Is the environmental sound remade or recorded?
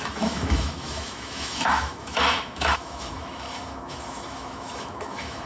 remade